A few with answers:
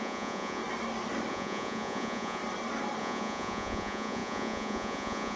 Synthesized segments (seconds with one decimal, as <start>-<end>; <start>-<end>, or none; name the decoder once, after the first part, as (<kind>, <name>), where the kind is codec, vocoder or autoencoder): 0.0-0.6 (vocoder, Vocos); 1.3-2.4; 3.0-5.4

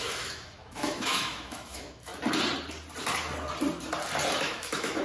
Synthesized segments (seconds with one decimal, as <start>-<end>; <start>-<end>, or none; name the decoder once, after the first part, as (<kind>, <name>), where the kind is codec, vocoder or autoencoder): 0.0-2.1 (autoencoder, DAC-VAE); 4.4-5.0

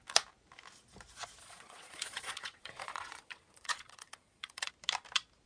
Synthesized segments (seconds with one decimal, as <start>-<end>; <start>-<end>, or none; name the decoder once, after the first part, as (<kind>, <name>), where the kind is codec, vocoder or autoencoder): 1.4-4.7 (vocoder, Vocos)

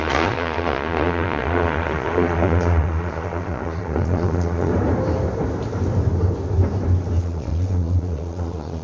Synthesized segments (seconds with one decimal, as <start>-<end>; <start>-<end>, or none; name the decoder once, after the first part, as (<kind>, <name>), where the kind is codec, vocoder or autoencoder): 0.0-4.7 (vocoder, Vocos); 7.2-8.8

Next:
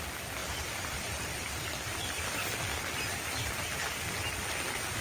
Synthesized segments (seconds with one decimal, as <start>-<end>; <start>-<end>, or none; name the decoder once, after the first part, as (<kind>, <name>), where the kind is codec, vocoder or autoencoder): 0.4-2.0 (vocoder, BigVGAN v2)